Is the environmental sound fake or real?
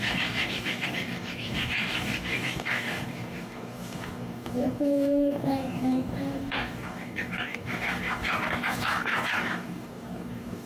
fake